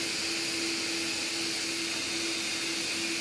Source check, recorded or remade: recorded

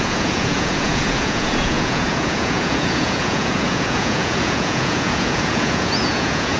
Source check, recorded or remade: remade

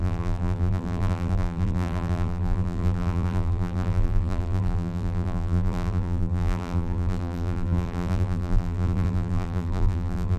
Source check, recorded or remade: remade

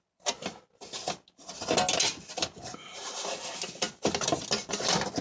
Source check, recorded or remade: recorded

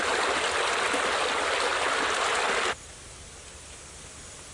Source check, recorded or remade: recorded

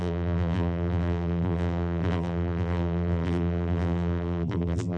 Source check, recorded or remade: remade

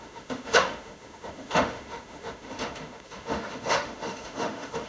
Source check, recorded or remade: remade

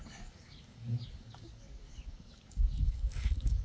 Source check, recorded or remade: remade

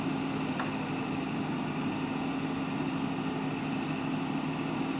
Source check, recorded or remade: recorded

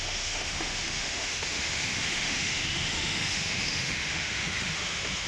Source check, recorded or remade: remade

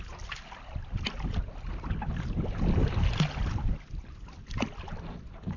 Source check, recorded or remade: recorded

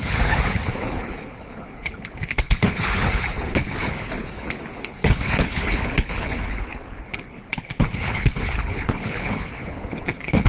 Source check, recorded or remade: remade